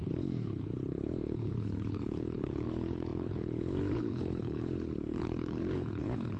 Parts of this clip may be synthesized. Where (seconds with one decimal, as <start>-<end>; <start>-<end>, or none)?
0.0-6.4